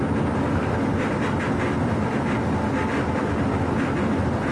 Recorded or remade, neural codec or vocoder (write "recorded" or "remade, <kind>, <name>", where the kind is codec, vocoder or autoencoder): recorded